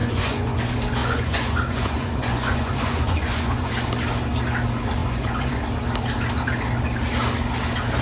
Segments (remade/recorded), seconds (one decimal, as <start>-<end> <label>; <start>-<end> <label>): 0.0-0.6 remade; 0.6-1.0 recorded; 1.0-3.7 remade; 3.7-5.0 recorded; 5.0-5.6 remade; 5.6-8.0 recorded